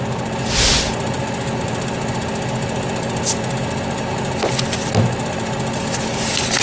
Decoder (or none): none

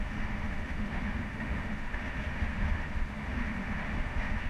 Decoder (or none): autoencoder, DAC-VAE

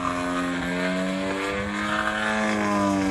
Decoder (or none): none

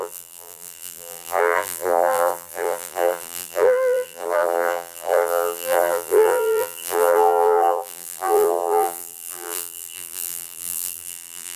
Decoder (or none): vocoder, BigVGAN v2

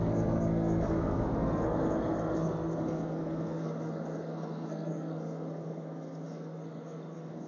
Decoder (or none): codec, SNAC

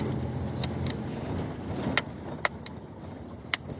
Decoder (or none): none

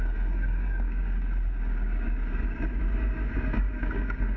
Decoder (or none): codec, DAC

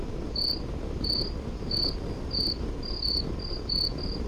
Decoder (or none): none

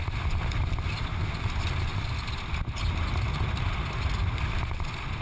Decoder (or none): none